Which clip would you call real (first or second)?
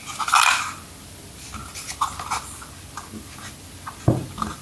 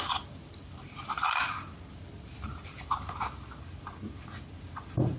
first